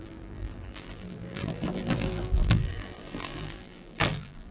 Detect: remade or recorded remade